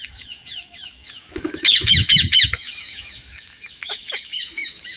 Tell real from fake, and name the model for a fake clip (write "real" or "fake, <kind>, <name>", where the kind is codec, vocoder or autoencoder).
fake, autoencoder, DAC-VAE